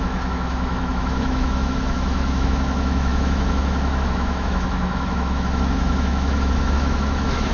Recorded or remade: remade